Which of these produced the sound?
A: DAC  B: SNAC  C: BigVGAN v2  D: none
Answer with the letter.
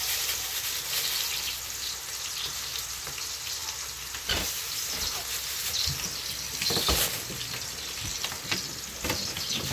D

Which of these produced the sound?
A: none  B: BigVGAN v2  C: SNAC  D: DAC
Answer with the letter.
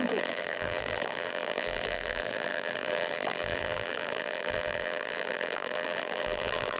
B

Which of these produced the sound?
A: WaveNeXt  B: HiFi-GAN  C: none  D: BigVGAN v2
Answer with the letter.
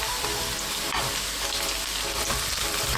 D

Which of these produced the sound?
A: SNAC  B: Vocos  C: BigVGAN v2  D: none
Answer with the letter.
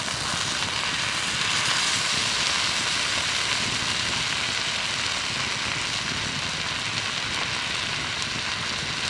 D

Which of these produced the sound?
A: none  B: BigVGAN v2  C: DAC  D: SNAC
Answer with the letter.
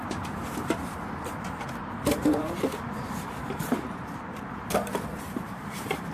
B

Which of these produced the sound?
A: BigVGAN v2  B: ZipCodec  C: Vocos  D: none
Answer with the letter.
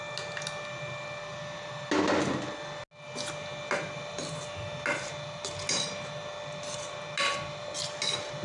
D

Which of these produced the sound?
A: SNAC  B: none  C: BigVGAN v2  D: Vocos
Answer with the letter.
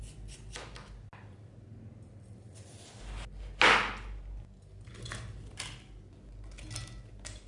B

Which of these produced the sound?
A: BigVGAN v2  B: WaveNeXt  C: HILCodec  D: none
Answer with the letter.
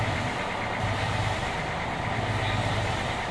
A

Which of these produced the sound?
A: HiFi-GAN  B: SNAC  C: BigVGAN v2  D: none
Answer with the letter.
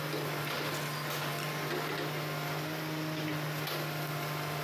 D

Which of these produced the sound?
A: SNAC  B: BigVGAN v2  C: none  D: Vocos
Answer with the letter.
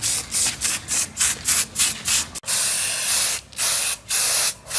C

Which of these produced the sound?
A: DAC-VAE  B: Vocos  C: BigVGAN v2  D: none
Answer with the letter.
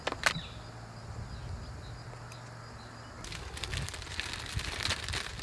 D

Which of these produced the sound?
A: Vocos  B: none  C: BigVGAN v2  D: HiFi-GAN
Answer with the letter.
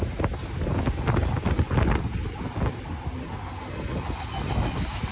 B